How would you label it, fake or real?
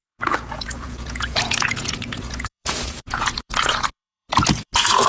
fake